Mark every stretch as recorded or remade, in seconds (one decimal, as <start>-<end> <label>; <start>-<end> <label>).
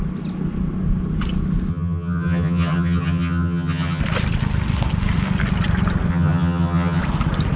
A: 0.0-1.7 recorded; 1.7-4.0 remade; 4.0-6.1 recorded; 6.1-7.0 remade; 7.0-7.6 recorded